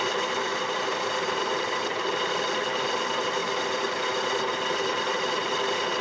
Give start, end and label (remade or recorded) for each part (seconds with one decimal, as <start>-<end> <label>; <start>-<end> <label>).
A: 0.0-6.0 recorded